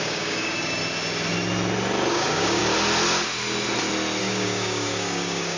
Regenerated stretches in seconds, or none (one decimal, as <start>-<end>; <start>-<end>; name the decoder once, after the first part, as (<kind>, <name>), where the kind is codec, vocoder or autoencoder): 0.0-0.8 (codec, DAC); 2.1-2.6; 4.2-5.6